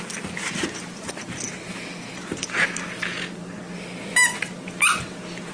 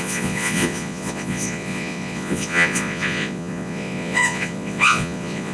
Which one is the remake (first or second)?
second